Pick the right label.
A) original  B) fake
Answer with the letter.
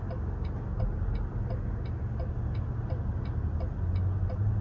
A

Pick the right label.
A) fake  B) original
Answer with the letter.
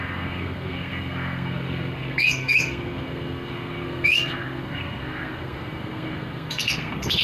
A